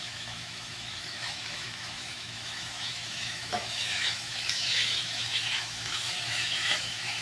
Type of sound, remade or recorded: remade